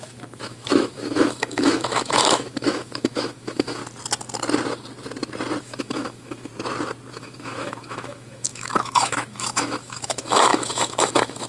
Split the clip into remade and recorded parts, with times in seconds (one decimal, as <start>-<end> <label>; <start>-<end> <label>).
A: 0.0-3.8 remade; 3.8-5.6 recorded; 5.6-6.5 remade; 6.5-7.1 recorded; 7.1-11.5 remade